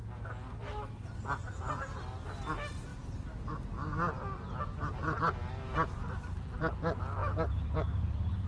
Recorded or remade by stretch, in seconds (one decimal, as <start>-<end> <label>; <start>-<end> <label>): 0.0-8.5 recorded